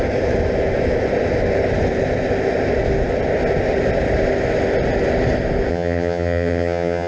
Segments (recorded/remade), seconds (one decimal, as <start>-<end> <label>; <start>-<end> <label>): 0.0-5.7 recorded; 5.7-7.1 remade